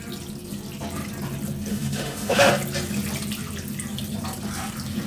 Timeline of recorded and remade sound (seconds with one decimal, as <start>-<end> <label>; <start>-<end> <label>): 0.0-1.7 recorded; 1.7-2.5 remade; 2.5-5.1 recorded